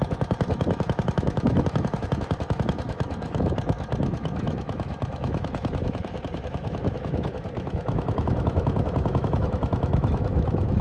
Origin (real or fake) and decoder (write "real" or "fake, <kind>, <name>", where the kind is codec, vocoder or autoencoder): fake, autoencoder, DAC-VAE